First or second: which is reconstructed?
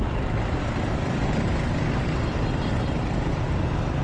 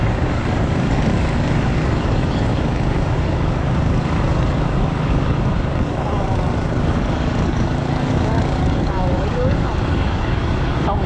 second